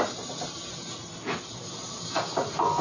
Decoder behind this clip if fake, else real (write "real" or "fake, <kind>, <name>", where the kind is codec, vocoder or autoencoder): real